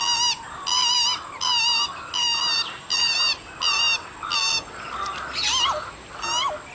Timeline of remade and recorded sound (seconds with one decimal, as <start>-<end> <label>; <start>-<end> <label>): 0.0-6.7 recorded